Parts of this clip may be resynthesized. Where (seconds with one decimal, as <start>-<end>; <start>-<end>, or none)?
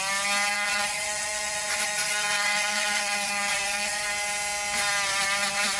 0.5-4.0